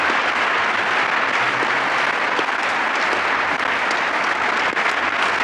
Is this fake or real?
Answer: real